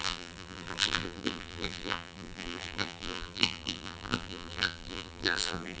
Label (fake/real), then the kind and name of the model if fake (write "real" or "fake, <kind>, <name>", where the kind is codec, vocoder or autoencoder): fake, vocoder, BigVGAN v2